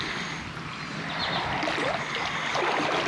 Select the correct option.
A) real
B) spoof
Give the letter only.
A